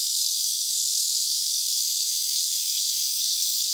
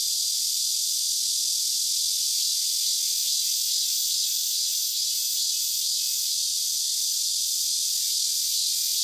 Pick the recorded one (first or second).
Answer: second